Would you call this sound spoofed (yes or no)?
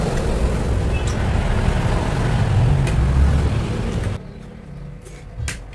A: no